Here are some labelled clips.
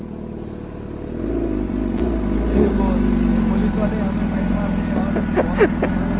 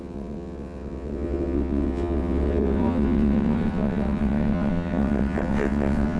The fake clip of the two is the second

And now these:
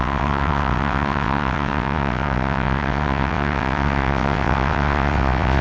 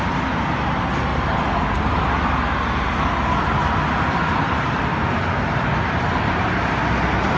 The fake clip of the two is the first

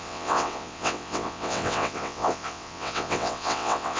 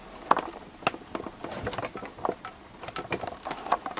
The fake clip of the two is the first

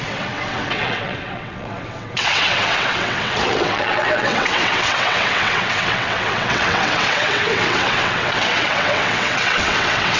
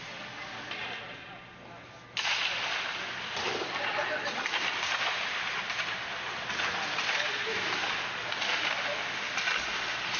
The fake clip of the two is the first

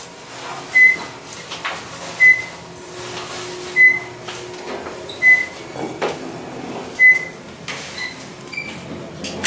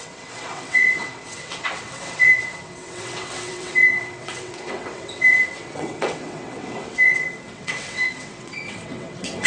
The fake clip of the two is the second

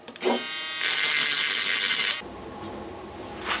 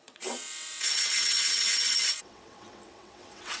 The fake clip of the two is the second